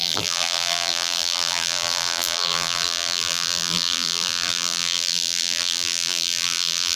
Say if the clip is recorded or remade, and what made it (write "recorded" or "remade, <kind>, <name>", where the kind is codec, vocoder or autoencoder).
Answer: remade, vocoder, BigVGAN v2